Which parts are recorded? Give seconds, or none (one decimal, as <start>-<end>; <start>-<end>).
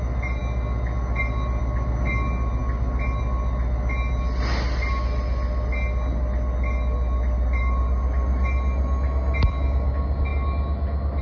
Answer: 0.0-11.2